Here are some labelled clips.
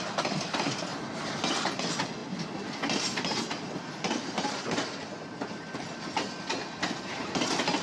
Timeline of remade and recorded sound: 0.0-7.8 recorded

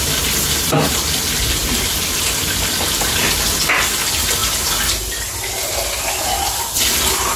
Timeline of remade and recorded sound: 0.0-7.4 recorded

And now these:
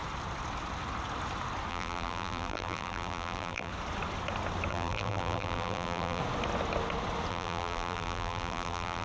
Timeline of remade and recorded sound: 0.0-1.7 recorded; 1.7-3.7 remade; 3.7-4.7 recorded; 4.7-6.2 remade; 6.2-7.3 recorded; 7.3-9.0 remade